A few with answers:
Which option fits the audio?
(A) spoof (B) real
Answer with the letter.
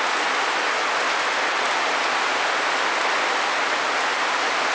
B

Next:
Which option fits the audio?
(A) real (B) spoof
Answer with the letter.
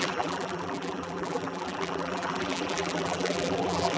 B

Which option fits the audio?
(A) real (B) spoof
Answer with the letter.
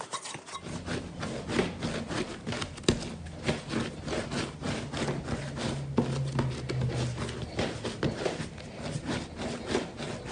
A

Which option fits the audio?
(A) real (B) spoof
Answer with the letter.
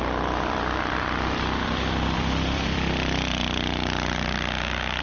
B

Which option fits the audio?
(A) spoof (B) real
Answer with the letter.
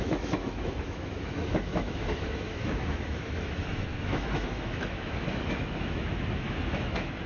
A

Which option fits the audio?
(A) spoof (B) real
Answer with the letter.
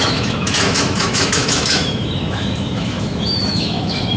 A